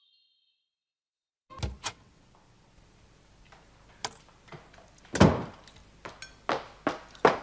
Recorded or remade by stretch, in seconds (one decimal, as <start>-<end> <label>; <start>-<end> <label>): 0.0-1.8 recorded; 1.8-2.3 remade; 2.3-7.4 recorded